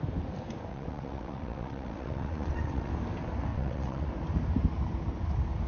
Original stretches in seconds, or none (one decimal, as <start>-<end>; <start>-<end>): 0.0-0.7; 2.9-3.5; 4.1-5.7